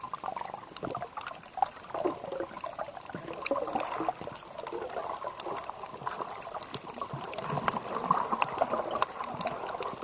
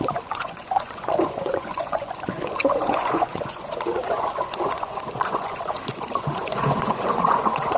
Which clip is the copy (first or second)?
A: second